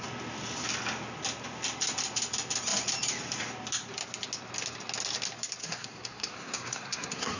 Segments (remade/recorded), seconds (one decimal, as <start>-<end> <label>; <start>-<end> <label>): 0.0-5.6 recorded; 5.6-7.4 remade